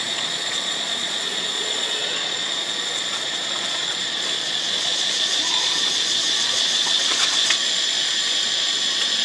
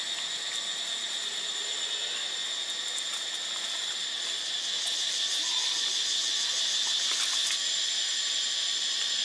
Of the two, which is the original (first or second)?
second